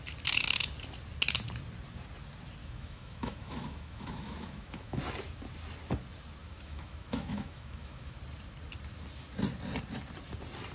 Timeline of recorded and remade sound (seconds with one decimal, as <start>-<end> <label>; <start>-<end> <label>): 0.0-2.6 recorded; 2.6-5.0 remade; 5.0-6.4 recorded; 6.4-8.2 remade; 8.2-10.7 recorded